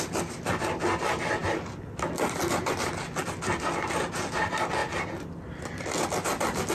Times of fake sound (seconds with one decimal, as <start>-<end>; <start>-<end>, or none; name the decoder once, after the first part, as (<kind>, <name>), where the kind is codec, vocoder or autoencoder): none